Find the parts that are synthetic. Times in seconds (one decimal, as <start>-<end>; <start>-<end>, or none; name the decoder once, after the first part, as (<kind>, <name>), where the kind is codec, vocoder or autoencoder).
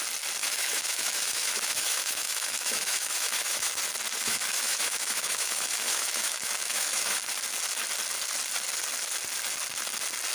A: 0.4-3.8 (autoencoder, DAC-VAE); 4.2-7.2